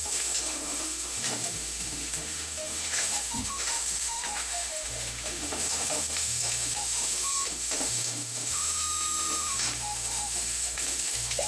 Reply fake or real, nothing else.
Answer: fake